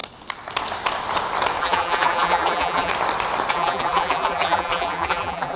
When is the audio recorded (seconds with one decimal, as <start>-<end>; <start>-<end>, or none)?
0.0-1.6; 2.9-3.5